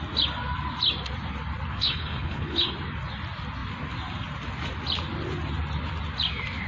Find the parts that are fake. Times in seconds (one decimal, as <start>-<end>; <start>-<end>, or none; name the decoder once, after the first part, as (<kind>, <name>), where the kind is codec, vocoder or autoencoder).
1.7-2.7 (codec, HILCodec)

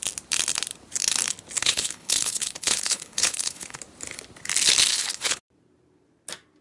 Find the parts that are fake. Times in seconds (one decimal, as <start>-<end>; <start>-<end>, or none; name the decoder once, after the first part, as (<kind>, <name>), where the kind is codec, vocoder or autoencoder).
1.6-3.8 (codec, HILCodec); 4.9-5.4

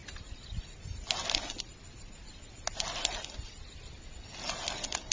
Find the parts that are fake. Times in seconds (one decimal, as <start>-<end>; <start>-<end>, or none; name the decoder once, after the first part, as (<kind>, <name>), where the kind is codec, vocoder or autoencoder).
none

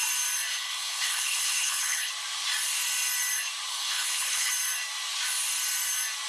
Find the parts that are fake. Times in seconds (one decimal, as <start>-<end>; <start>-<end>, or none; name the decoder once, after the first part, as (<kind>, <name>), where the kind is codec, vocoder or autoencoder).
0.5-2.1 (codec, HILCodec); 3.7-4.5

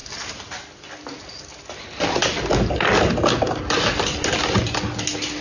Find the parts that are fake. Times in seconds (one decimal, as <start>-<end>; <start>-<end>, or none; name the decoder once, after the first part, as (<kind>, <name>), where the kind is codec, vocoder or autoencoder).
none